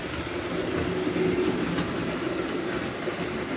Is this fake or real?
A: real